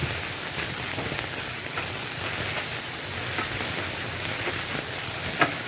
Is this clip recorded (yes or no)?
yes